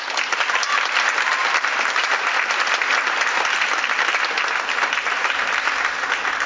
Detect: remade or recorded recorded